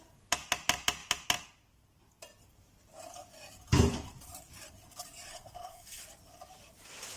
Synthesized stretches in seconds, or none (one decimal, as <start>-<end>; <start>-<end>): 5.3-6.0